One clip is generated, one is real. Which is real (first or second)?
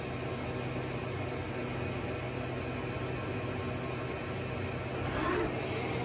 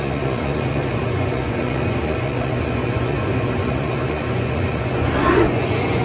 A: first